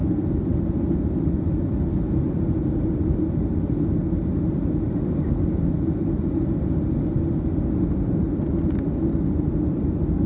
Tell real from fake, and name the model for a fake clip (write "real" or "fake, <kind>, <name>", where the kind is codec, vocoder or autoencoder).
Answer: real